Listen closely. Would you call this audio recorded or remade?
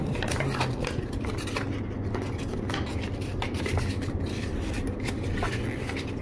recorded